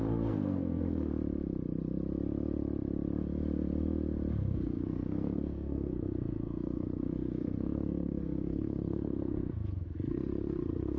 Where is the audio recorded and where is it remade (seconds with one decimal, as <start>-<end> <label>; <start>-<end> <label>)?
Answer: 0.0-1.1 remade; 1.1-4.4 recorded; 4.4-11.0 remade